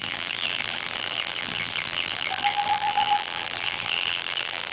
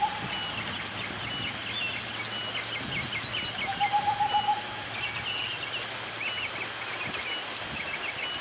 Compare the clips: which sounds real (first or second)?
second